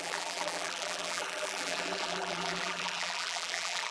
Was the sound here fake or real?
fake